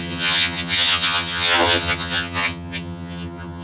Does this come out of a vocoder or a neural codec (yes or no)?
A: yes